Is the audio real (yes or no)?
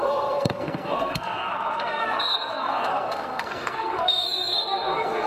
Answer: no